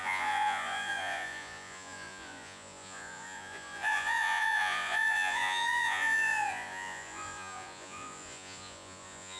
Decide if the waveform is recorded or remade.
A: remade